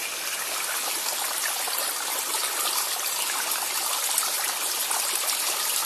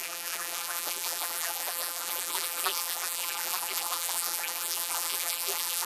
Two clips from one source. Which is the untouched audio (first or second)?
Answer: first